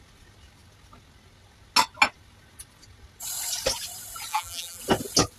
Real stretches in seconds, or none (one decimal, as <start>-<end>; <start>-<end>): 0.0-4.3; 4.8-5.4